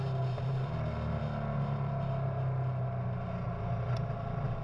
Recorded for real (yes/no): yes